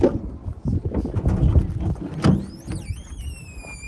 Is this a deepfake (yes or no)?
no